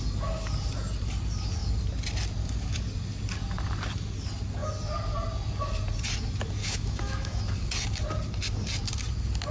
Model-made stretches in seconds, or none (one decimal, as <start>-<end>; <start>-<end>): 6.6-7.4